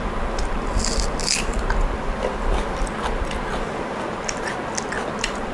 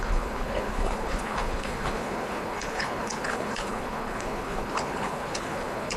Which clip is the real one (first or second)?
first